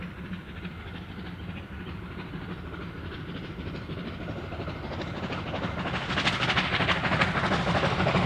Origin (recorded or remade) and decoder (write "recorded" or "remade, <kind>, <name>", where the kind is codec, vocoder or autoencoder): recorded